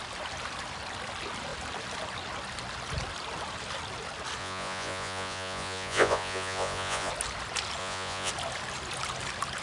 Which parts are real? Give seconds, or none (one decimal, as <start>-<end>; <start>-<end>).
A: 0.0-4.4; 7.1-7.8; 8.3-9.6

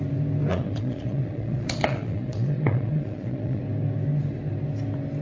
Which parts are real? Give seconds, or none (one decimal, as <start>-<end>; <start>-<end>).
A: 0.0-0.5; 3.6-5.2

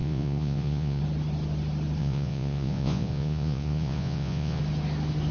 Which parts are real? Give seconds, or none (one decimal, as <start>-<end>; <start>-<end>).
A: 1.0-2.0; 4.6-5.3

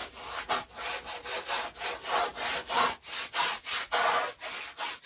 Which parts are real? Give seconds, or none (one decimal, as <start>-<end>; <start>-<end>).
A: 0.0-5.1

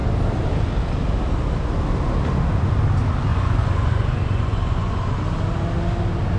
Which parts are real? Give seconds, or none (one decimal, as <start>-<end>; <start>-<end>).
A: 0.0-3.3; 5.2-6.4

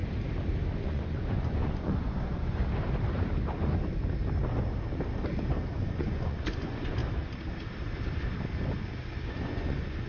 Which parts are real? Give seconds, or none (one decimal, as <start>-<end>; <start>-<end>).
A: 0.0-0.8; 2.6-5.7; 7.0-9.3

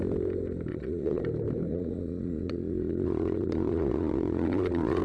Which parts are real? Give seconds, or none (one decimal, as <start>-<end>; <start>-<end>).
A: 0.0-0.7; 1.2-1.7